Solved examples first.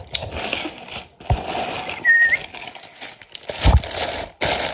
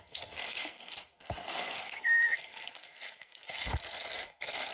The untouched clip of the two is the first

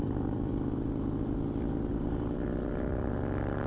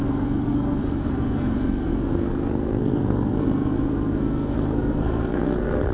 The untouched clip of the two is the first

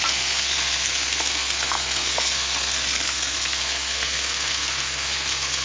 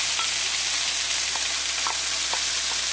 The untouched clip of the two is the second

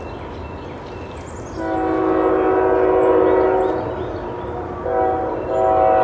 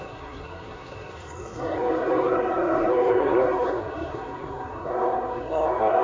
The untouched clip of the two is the first